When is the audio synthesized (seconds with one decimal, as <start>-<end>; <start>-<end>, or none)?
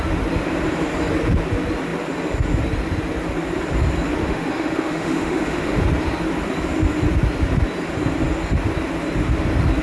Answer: 4.2-5.8